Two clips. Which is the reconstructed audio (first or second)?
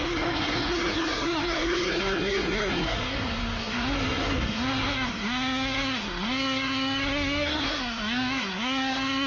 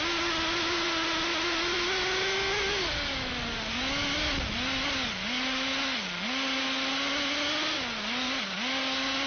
first